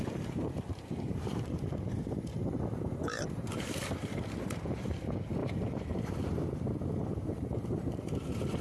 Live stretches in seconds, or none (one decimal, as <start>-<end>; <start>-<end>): none